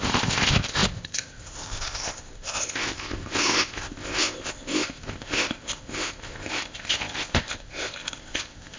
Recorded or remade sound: remade